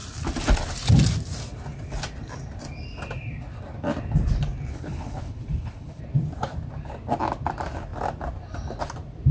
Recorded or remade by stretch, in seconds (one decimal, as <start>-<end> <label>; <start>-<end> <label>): 0.0-4.7 recorded; 4.7-6.0 remade; 6.0-9.3 recorded